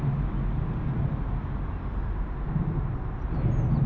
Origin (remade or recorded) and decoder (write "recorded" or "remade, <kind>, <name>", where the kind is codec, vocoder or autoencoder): recorded